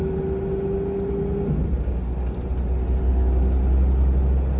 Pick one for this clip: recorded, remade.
recorded